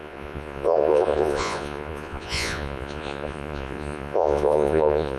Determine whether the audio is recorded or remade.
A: remade